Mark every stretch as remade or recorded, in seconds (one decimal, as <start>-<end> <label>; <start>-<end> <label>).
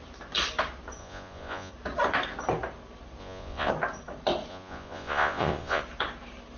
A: 0.0-1.0 recorded; 1.0-1.7 remade; 1.7-3.2 recorded; 3.2-3.7 remade; 3.7-4.5 recorded; 4.5-5.8 remade; 5.8-6.6 recorded